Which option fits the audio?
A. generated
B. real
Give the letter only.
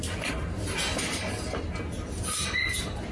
B